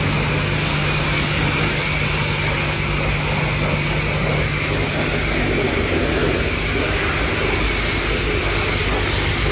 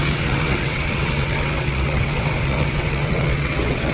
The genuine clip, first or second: first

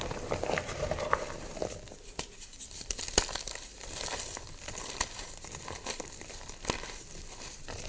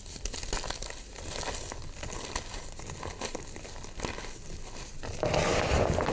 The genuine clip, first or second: second